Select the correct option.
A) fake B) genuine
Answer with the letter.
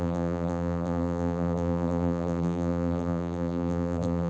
A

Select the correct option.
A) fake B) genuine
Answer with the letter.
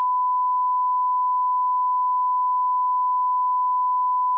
B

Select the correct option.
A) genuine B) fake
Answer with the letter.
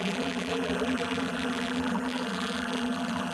B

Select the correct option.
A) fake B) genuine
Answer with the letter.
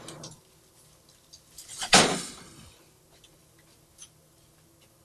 B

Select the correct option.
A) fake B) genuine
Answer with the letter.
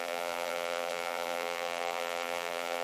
A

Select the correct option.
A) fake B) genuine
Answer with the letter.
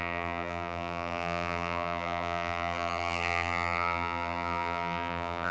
A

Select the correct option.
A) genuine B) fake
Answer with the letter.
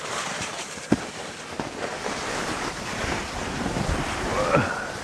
A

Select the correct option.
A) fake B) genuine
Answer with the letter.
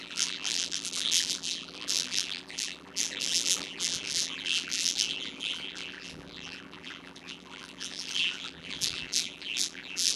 A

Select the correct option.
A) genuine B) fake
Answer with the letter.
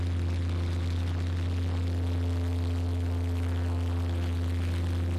A